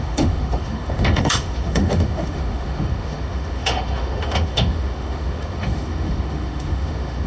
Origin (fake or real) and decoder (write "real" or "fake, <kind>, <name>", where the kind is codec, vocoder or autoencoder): fake, autoencoder, DAC-VAE